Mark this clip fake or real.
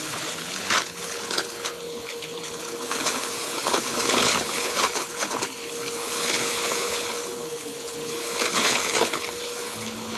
fake